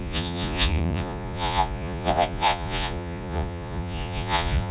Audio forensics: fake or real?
fake